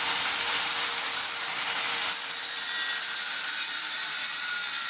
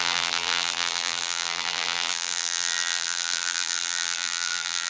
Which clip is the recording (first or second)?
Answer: first